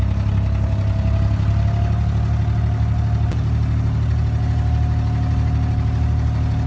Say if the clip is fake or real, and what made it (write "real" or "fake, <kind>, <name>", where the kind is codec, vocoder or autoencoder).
real